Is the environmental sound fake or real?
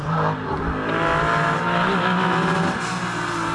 real